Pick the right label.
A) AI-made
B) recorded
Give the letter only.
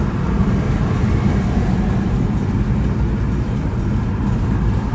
B